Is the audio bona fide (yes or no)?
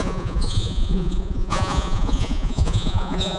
no